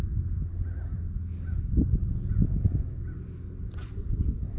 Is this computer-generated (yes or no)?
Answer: no